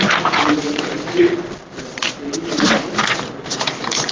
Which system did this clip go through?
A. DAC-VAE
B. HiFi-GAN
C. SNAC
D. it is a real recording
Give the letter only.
D